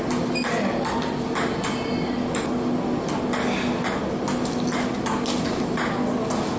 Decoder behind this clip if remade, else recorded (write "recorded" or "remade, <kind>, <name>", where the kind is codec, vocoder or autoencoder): recorded